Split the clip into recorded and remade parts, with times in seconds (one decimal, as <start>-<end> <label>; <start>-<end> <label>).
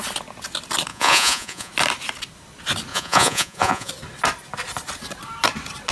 0.0-0.9 recorded; 0.9-1.7 remade; 1.7-2.9 recorded; 2.9-3.9 remade; 3.9-5.9 recorded